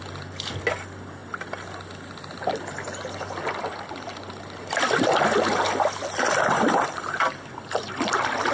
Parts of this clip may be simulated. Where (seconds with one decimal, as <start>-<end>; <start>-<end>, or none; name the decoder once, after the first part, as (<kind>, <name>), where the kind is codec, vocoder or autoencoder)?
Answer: 4.1-7.5 (vocoder, BigVGAN v2)